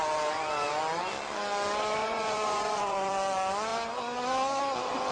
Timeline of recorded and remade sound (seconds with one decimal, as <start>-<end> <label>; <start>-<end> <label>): 0.0-2.0 recorded; 2.0-3.1 remade; 3.1-5.1 recorded